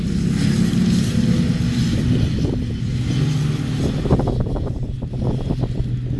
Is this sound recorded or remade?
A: recorded